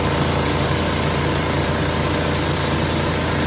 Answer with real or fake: real